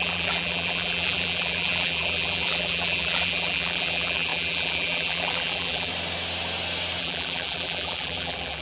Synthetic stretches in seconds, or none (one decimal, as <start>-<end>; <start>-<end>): 0.0-5.9; 7.0-8.6